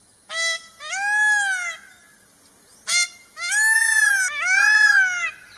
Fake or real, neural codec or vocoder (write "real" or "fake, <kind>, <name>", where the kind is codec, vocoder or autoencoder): real